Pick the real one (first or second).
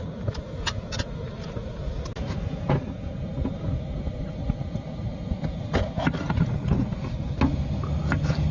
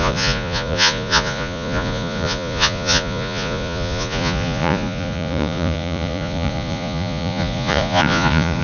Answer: first